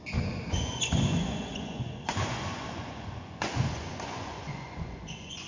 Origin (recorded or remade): remade